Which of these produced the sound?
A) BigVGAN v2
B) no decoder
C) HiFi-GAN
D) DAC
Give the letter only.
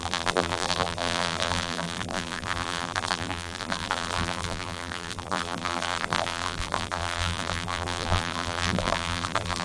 A